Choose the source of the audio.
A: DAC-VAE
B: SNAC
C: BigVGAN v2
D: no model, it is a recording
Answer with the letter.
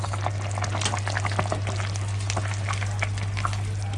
D